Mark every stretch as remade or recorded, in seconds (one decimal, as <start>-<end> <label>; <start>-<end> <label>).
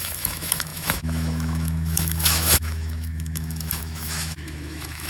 0.0-5.1 remade